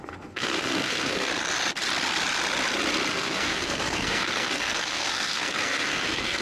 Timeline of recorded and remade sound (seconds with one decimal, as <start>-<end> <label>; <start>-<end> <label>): 0.0-1.3 remade; 1.3-3.1 recorded; 3.1-6.4 remade